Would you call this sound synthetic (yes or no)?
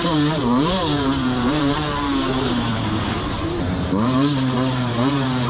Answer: yes